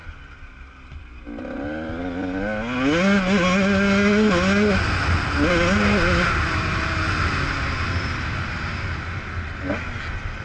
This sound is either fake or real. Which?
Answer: real